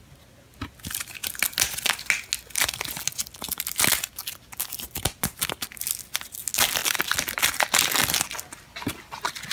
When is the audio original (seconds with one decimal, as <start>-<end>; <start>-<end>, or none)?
0.0-9.5